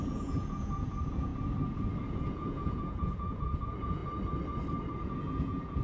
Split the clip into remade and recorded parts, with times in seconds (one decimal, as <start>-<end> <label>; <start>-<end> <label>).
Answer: 0.0-1.3 remade; 1.3-2.1 recorded; 2.1-4.0 remade; 4.0-5.2 recorded; 5.2-5.8 remade